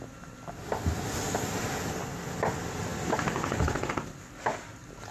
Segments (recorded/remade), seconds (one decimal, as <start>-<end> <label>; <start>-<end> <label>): 0.0-5.1 recorded